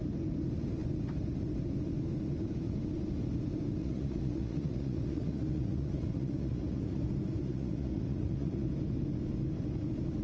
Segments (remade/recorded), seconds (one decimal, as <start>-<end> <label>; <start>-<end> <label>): 0.0-3.8 recorded; 3.8-7.0 remade; 7.0-7.4 recorded; 7.4-8.7 remade; 8.7-10.2 recorded